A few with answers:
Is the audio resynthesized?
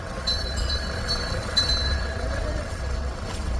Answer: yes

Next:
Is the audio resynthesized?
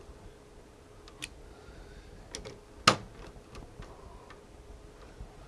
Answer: no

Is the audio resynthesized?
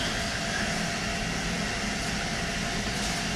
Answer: no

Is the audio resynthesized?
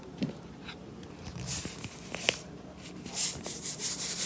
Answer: yes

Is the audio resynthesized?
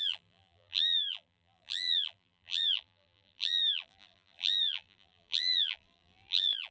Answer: yes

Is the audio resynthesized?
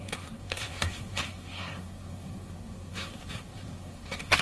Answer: yes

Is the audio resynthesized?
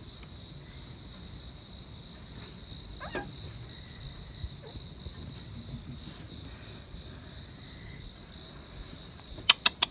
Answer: no